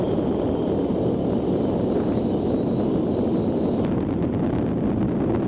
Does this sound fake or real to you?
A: real